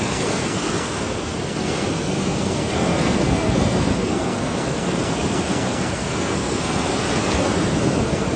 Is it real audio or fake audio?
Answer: fake